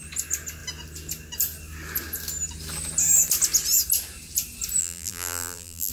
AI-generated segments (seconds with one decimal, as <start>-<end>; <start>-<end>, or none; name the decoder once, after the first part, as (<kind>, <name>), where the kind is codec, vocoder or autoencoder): 4.8-5.9 (vocoder, BigVGAN v2)